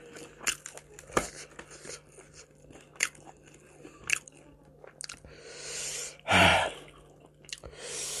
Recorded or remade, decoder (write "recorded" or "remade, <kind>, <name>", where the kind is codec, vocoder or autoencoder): recorded